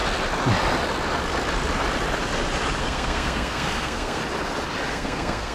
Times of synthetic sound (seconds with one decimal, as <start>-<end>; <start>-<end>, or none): 2.8-4.2; 4.9-5.5